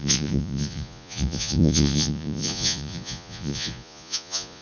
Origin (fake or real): fake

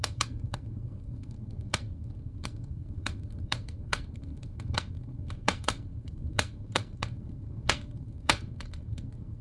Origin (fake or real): fake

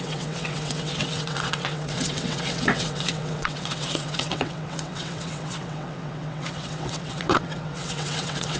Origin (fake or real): fake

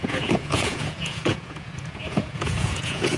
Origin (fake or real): fake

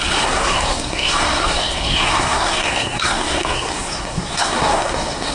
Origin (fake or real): fake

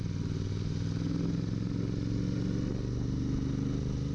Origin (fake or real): real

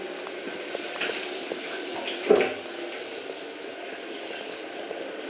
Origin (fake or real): real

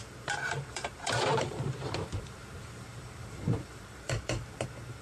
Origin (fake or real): fake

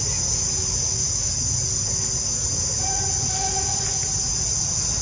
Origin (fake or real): real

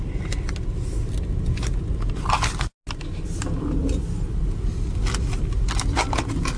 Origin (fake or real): real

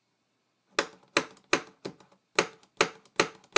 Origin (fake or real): real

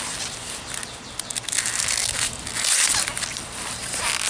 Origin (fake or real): real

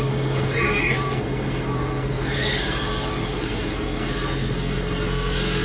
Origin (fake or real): fake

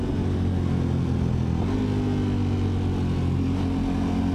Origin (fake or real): real